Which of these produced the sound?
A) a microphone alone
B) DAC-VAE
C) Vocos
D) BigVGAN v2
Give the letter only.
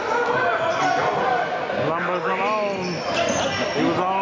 A